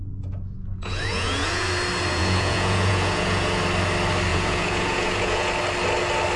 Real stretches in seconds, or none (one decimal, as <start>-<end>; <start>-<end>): 1.7-2.1; 3.6-4.3; 5.5-6.4